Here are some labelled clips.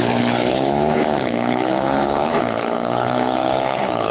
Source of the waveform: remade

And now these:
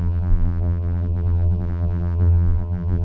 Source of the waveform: remade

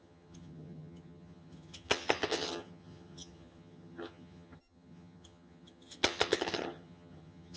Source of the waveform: remade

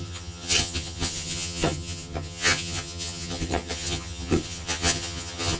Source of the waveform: remade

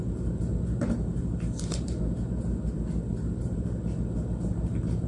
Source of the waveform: remade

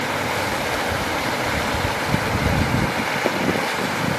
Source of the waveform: recorded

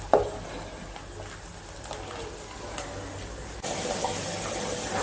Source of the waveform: recorded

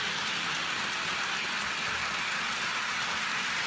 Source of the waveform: recorded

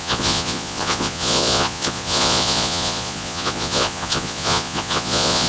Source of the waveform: remade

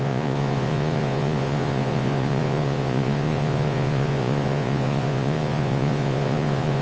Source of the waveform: remade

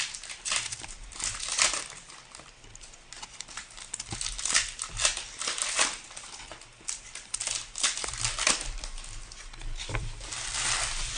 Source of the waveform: remade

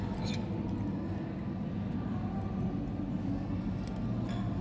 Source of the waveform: recorded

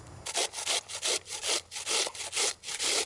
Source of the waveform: recorded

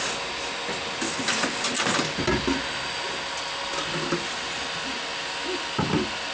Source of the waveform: recorded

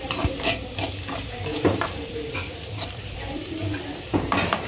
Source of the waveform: remade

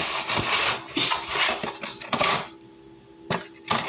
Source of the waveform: recorded